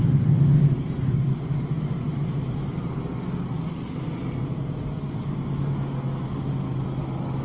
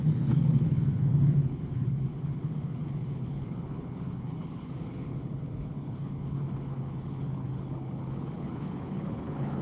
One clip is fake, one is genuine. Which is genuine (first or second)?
first